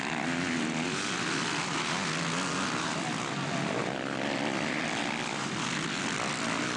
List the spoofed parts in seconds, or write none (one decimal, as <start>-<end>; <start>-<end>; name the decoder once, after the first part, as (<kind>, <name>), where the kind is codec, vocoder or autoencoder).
3.8-6.8 (vocoder, BigVGAN v2)